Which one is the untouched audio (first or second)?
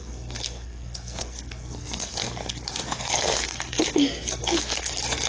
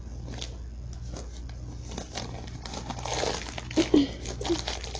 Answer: second